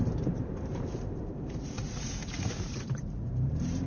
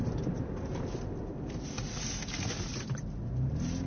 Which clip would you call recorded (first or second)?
second